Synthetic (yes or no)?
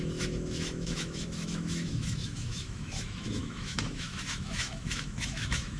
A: yes